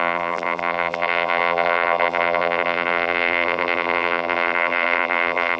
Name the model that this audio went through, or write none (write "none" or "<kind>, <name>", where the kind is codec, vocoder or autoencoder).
vocoder, BigVGAN v2